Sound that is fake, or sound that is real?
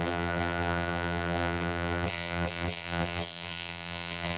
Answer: fake